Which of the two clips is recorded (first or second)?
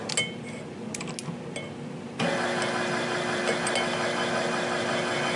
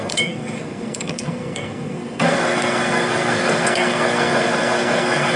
first